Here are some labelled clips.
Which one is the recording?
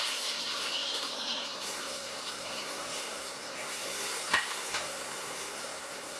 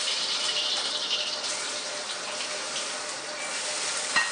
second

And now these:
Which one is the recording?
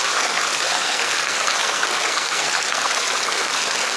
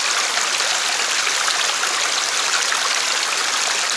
second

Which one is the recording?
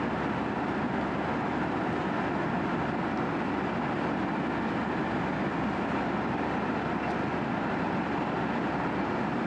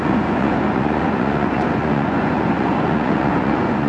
first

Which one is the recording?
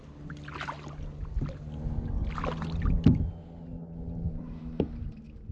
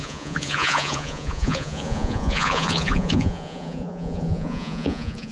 first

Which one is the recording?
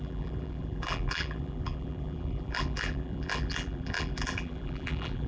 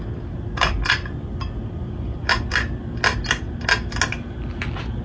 second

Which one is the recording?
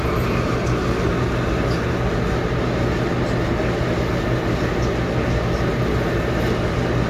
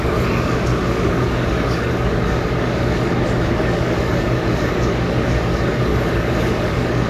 first